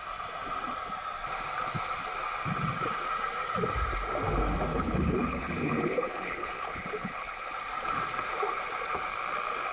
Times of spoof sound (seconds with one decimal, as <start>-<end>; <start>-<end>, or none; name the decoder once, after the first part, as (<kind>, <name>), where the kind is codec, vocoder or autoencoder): 4.7-7.5 (codec, HILCodec)